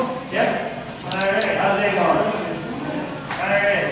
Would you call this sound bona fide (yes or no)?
yes